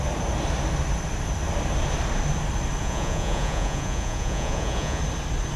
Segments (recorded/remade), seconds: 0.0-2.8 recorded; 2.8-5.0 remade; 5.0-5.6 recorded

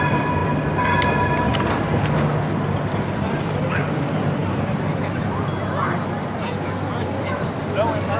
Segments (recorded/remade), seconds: 0.0-0.4 remade; 0.4-2.6 recorded; 2.6-4.4 remade; 4.4-6.9 recorded; 6.9-8.2 remade

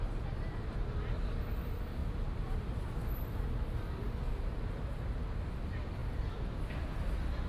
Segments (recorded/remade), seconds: 0.0-7.5 recorded

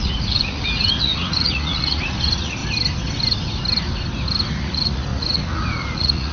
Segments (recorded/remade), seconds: 0.0-2.6 remade; 2.6-4.5 recorded; 4.5-6.3 remade

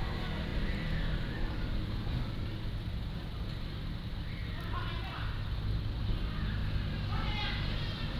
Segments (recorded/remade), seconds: 0.0-8.2 recorded

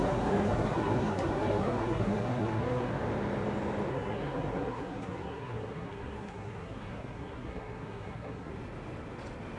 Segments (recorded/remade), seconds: 0.0-2.9 remade; 2.9-3.9 recorded; 3.9-8.5 remade; 8.5-9.6 recorded

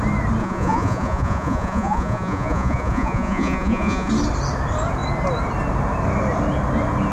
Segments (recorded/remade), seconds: 0.0-0.4 recorded; 0.4-4.1 remade; 4.1-7.1 recorded

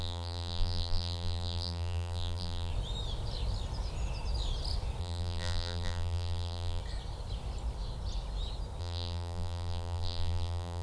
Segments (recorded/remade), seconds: 0.0-2.7 remade; 2.7-5.0 recorded; 5.0-6.8 remade; 6.8-8.8 recorded; 8.8-10.8 remade